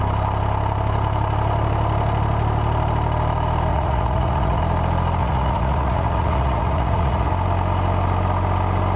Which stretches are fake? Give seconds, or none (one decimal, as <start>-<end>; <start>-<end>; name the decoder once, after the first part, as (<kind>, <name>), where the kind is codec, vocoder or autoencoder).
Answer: 3.7-4.6 (vocoder, Vocos); 5.2-7.3